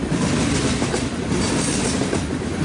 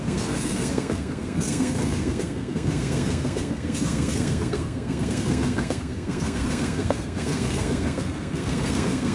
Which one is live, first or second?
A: first